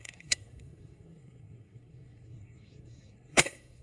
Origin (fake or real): fake